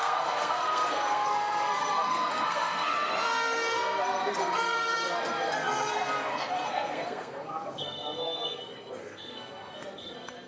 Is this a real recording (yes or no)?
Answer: no